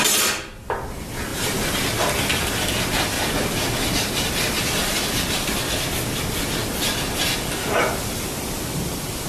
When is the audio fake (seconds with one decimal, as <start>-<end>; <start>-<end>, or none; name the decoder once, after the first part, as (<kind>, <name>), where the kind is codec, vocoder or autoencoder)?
none